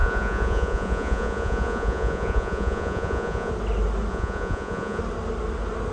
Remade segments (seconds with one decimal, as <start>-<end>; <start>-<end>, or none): 0.0-3.5; 4.1-5.0